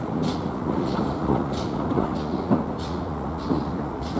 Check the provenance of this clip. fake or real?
fake